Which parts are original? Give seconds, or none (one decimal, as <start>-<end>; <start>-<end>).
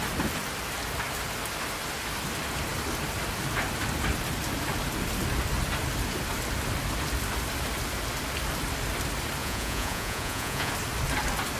0.0-9.4; 10.7-11.6